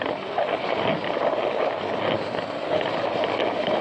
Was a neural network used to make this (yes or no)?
no